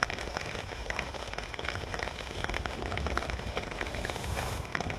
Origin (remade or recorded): remade